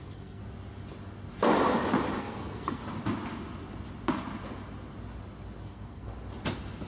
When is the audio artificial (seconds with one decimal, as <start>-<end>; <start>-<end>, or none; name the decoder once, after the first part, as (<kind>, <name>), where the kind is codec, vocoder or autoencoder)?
0.0-0.4 (codec, SNAC); 2.2-2.8; 5.6-6.1